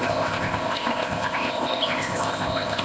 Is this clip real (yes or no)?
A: no